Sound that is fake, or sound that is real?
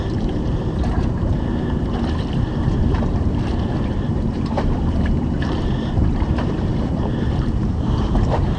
fake